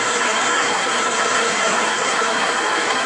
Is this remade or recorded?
remade